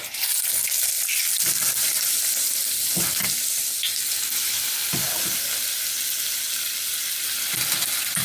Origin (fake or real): real